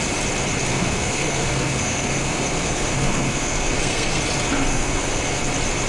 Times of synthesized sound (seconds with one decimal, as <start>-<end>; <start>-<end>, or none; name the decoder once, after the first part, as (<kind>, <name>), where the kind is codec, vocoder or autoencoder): 0.7-4.2 (codec, SNAC); 4.7-5.4